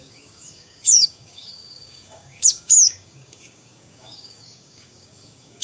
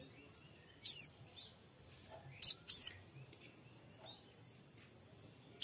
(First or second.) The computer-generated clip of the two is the first